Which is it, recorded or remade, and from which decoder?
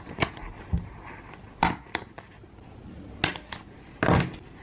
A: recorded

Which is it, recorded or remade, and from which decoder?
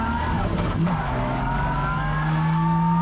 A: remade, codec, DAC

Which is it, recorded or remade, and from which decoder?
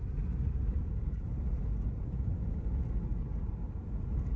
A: recorded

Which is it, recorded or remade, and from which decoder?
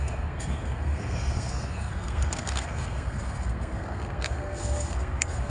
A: remade, codec, SNAC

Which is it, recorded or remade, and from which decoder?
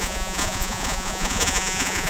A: remade, vocoder, Vocos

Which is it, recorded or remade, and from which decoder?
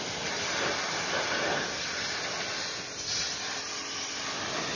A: recorded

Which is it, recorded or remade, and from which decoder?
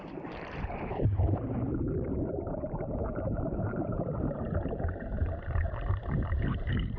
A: remade, vocoder, BigVGAN v2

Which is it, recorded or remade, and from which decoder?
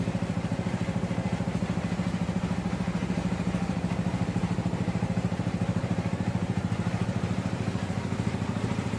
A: remade, vocoder, BigVGAN v2